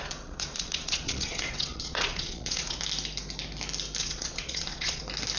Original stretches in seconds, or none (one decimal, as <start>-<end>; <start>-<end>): 2.8-4.0; 5.0-5.4